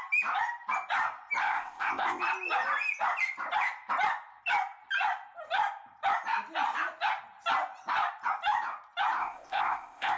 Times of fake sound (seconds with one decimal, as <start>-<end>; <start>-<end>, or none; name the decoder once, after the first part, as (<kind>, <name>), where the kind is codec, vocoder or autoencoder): 1.4-2.2 (codec, ZipCodec); 9.2-10.2